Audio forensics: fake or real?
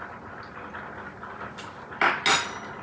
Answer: real